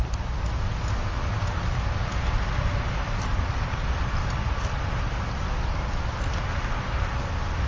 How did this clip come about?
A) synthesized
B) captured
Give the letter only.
B